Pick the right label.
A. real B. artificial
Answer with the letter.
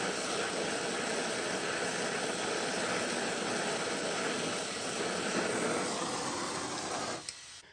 A